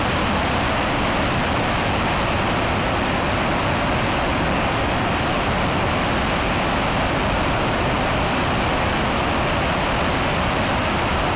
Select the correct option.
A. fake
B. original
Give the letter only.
B